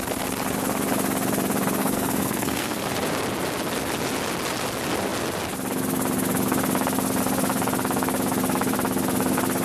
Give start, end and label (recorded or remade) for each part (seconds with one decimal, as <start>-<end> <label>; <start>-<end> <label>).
0.0-1.8 recorded; 1.8-2.8 remade; 2.8-9.6 recorded